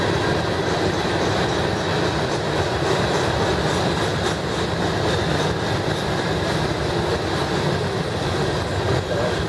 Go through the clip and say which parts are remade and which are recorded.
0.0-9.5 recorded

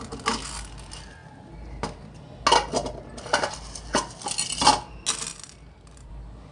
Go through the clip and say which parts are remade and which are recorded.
0.0-6.5 recorded

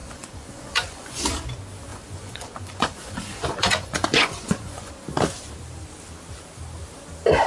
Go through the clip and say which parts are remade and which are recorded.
0.0-1.2 remade; 1.2-1.9 recorded; 1.9-4.9 remade; 4.9-7.5 recorded

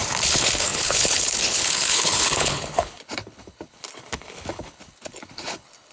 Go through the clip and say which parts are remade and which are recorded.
0.0-5.9 remade

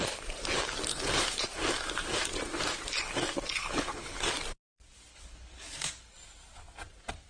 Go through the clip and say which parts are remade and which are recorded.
0.0-0.9 recorded; 0.9-1.4 remade; 1.4-3.6 recorded; 3.6-4.2 remade; 4.2-5.1 recorded; 5.1-5.9 remade; 5.9-7.3 recorded